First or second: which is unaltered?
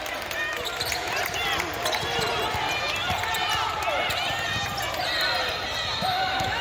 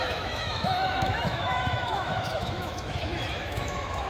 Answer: first